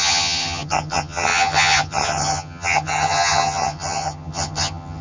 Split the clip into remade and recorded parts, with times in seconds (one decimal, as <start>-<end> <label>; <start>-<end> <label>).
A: 0.0-5.0 remade